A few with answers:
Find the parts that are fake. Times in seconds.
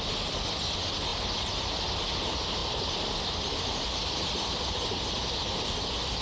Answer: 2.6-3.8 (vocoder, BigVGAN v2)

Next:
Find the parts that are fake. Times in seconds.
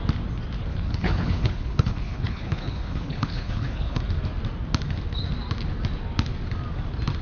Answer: 0.7-4.0 (codec, HILCodec)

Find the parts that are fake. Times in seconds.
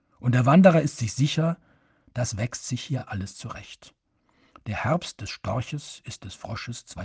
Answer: none